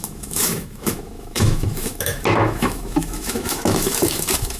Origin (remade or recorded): remade